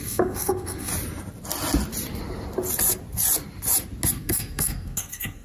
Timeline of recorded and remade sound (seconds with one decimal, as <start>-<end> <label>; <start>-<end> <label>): 0.0-0.9 remade; 0.9-4.1 recorded; 4.1-5.4 remade